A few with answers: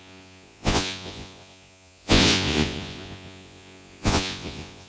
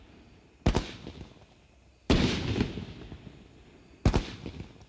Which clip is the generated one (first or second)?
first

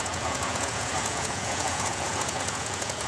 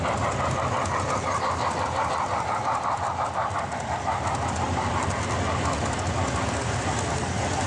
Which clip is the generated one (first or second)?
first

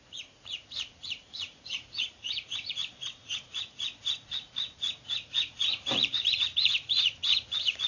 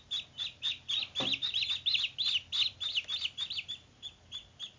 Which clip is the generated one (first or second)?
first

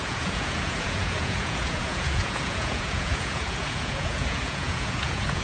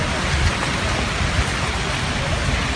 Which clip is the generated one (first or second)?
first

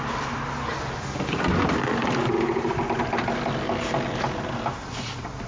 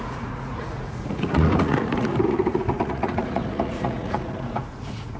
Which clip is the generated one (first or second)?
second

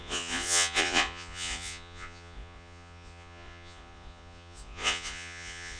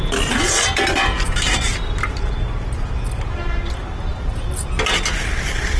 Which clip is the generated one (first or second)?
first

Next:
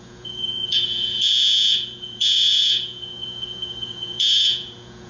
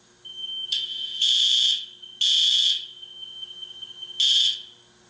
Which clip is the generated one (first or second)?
first